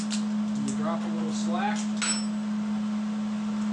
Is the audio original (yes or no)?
yes